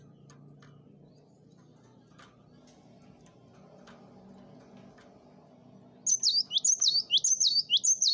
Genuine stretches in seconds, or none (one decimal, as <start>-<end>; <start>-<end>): 0.0-8.1